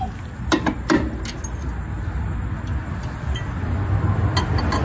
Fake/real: real